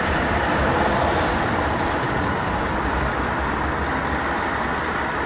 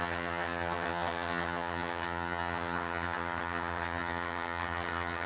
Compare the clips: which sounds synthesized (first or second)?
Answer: second